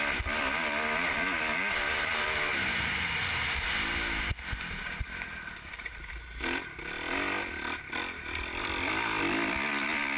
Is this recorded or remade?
recorded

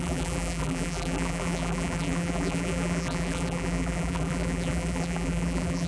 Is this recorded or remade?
remade